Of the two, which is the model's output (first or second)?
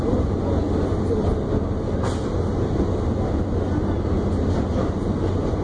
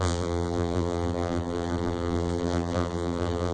second